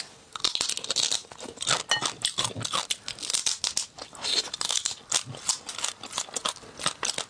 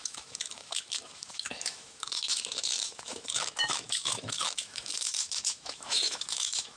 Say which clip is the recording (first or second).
first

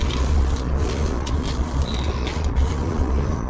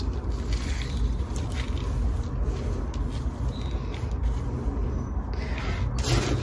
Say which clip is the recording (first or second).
second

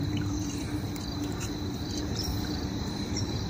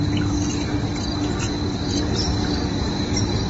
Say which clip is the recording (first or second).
second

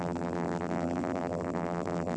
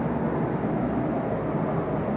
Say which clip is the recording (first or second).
second